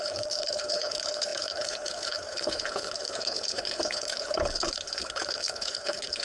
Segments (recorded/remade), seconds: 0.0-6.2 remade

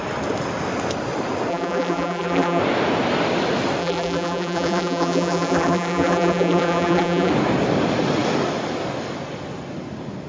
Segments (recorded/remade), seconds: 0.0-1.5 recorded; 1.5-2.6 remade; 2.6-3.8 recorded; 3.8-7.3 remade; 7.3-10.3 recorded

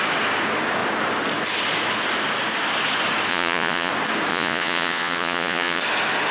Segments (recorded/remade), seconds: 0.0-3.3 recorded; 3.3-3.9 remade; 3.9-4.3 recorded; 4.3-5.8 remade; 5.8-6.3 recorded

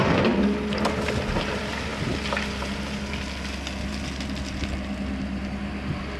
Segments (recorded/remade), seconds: 0.0-6.2 recorded